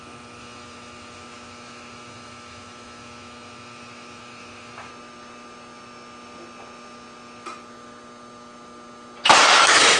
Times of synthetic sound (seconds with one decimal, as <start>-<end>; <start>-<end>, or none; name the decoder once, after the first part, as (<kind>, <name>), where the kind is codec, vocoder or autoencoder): 0.0-4.9 (autoencoder, DAC-VAE); 9.6-10.0